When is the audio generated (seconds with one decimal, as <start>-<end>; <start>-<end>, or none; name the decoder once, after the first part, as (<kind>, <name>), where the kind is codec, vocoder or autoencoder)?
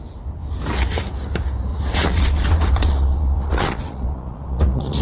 1.7-5.0 (vocoder, Vocos)